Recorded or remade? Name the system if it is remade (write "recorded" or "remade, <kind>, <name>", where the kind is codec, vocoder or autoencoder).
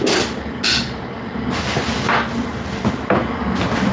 recorded